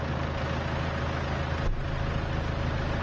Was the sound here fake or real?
real